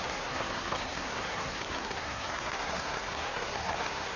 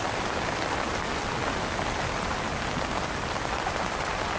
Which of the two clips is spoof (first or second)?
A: first